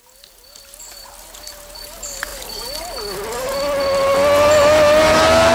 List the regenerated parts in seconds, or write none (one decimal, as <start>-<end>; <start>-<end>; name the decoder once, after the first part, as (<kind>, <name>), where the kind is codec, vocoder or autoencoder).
none